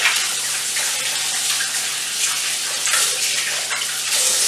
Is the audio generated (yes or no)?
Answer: no